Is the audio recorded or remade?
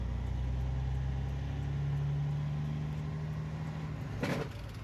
recorded